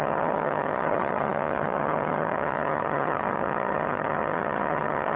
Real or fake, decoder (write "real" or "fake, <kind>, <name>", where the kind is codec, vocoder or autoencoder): fake, vocoder, HiFi-GAN